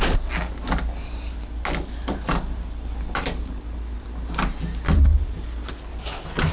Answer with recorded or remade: recorded